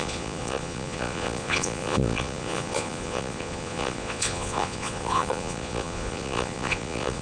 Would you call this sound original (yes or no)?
no